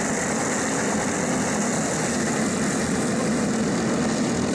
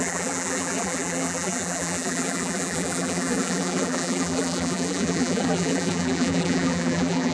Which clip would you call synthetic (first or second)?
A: second